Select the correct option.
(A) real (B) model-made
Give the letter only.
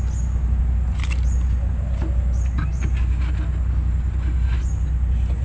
A